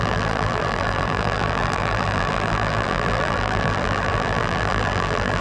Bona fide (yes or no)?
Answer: no